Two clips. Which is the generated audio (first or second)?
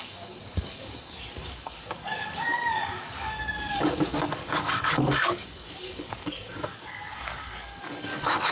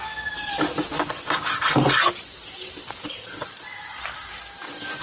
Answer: first